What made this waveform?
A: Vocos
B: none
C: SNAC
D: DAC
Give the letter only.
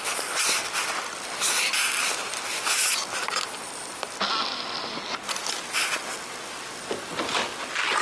B